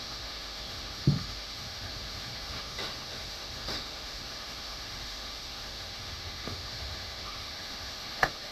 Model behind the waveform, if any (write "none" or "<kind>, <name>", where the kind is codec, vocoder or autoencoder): autoencoder, DAC-VAE